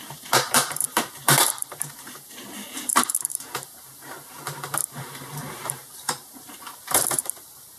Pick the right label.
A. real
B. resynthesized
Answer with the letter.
B